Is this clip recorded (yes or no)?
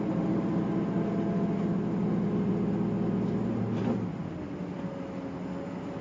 yes